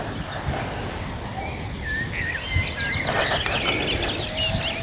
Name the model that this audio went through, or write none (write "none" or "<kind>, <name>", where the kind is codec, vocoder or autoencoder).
none